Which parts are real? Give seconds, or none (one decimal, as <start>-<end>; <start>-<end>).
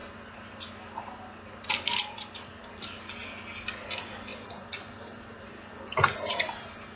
3.0-4.3; 5.7-7.0